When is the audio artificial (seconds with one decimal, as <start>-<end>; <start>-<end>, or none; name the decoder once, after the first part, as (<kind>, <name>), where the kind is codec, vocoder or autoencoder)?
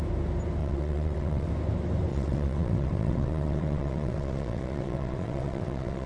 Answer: 0.6-1.5 (vocoder, WaveNeXt); 2.1-6.1